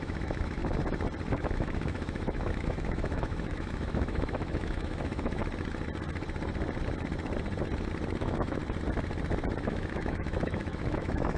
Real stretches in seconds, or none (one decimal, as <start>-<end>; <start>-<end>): 0.6-1.3; 5.4-8.2; 8.6-9.6